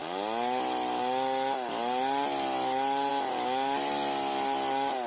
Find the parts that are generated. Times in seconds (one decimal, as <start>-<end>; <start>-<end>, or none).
none